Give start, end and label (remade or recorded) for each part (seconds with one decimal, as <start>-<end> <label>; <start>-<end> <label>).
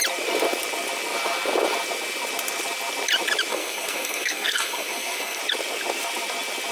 0.0-3.5 recorded; 3.5-5.4 remade; 5.4-6.7 recorded